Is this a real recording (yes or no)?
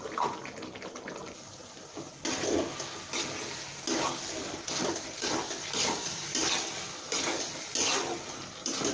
yes